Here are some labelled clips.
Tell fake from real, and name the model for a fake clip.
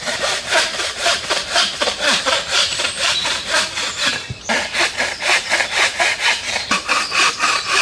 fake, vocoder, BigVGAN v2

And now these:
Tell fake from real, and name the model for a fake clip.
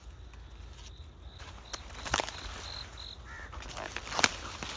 real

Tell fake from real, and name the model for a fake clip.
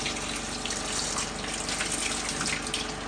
real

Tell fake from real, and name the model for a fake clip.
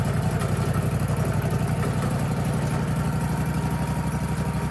real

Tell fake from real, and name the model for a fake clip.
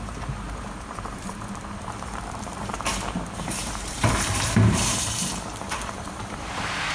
fake, vocoder, BigVGAN v2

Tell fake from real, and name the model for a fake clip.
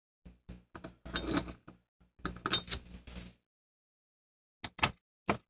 real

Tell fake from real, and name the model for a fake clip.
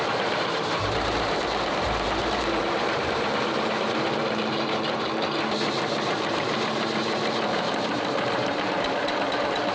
fake, vocoder, BigVGAN v2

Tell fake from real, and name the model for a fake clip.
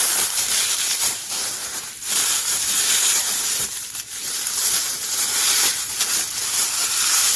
fake, vocoder, BigVGAN v2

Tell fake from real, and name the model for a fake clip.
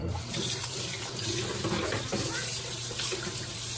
fake, vocoder, BigVGAN v2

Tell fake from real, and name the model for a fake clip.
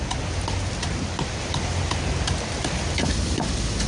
real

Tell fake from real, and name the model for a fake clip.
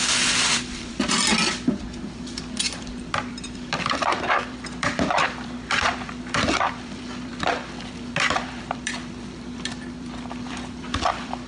fake, vocoder, BigVGAN v2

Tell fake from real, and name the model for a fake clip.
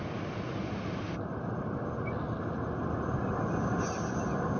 real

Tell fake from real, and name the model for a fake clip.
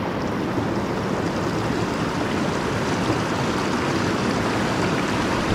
real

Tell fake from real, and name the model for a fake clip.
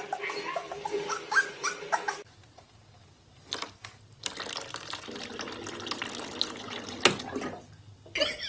real